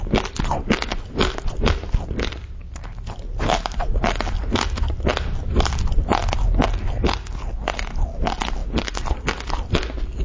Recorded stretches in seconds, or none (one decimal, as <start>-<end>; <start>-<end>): 0.0-10.2

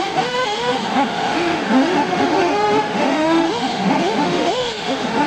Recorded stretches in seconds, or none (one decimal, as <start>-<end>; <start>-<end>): none